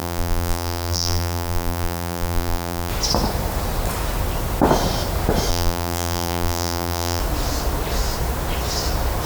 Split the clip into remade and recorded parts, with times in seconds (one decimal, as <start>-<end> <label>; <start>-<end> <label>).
0.0-2.9 remade; 2.9-5.5 recorded; 5.5-7.2 remade; 7.2-9.3 recorded